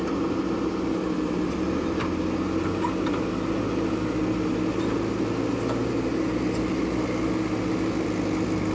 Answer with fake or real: real